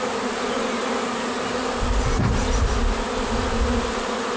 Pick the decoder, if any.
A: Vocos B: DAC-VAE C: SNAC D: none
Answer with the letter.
D